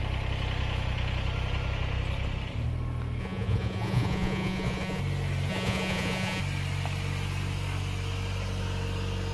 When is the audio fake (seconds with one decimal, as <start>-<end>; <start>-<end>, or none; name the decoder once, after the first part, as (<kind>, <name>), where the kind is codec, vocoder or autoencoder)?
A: 3.2-5.0 (vocoder, Vocos); 5.5-6.4